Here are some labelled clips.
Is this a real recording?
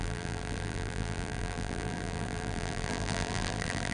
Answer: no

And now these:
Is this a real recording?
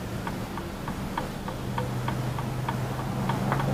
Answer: yes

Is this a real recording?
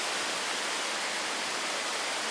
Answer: yes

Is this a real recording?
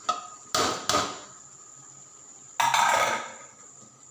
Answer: yes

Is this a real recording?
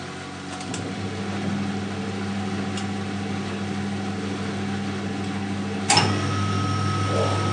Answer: yes